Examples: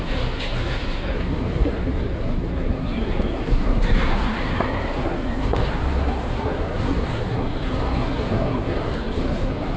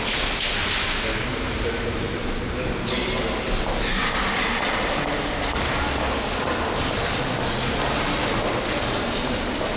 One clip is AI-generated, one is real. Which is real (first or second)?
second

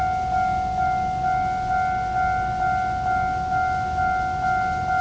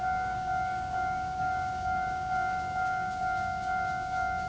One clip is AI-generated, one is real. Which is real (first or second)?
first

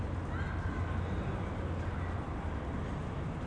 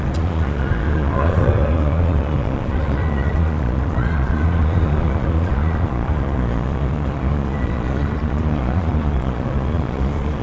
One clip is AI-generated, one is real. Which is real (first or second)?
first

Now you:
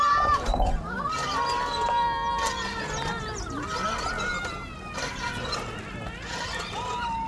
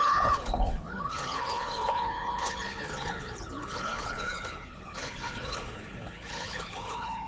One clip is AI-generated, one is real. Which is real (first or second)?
first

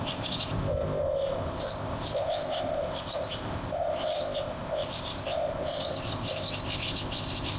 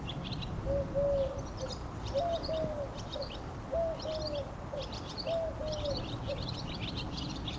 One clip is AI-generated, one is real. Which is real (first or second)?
second